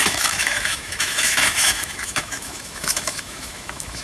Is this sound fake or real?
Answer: fake